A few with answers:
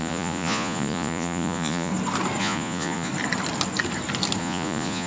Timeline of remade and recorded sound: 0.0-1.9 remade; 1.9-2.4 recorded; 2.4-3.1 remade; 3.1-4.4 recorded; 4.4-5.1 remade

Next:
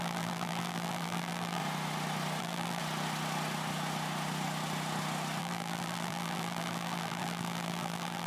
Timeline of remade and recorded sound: 0.0-1.6 remade; 1.6-2.4 recorded; 2.4-2.8 remade; 2.8-5.4 recorded; 5.4-8.3 remade